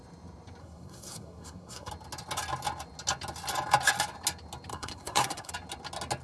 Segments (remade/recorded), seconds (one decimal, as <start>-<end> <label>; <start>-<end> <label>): 0.0-0.6 recorded; 0.6-1.9 remade; 1.9-4.7 recorded; 4.7-5.5 remade; 5.5-6.2 recorded